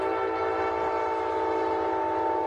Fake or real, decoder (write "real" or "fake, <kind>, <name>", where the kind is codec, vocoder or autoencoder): real